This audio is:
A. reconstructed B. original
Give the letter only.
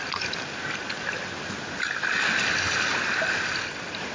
B